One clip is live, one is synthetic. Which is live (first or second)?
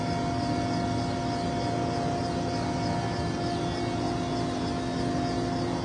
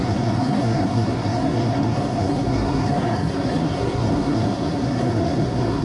first